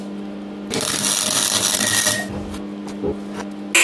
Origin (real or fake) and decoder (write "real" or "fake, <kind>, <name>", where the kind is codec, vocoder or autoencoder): real